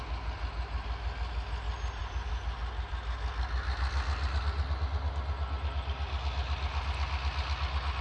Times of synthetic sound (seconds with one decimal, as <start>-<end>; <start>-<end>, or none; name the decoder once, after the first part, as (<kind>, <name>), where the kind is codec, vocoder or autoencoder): none

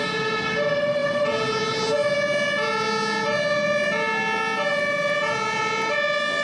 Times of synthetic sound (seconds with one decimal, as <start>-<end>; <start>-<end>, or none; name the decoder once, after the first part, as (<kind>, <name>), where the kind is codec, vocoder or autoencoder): none

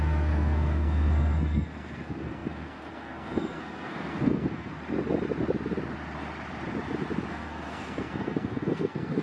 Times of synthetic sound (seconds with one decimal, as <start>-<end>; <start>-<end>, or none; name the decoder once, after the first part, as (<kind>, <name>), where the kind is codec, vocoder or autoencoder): 0.0-4.7 (codec, SNAC); 7.3-9.2

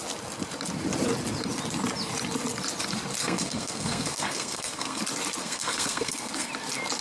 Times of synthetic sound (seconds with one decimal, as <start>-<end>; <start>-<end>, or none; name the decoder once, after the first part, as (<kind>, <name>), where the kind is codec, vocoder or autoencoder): 3.2-5.0 (codec, SNAC); 5.4-6.5

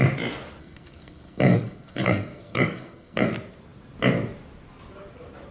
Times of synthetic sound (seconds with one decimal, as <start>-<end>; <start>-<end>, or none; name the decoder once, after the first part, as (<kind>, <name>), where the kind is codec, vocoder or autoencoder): 0.6-3.3 (codec, SNAC)

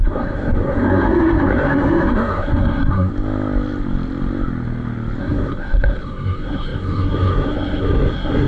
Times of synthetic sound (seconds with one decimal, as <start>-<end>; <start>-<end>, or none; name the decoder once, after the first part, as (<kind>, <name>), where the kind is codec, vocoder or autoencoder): 0.0-3.1 (codec, SNAC); 5.2-8.5

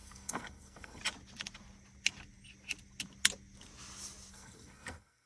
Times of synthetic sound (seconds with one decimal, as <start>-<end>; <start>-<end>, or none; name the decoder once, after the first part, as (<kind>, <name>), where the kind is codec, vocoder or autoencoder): 0.0-1.0 (codec, SNAC); 4.3-5.3

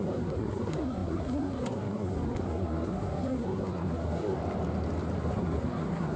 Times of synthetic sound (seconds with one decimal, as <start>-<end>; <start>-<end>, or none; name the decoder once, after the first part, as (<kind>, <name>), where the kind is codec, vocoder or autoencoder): 0.0-4.4 (codec, SNAC); 5.2-6.2